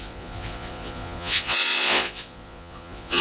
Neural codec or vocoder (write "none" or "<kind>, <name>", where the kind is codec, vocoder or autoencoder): vocoder, Vocos